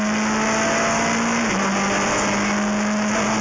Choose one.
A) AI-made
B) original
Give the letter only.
B